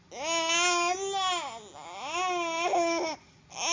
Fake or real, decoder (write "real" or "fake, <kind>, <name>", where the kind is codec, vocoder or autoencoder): real